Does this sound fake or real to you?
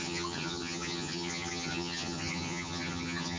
fake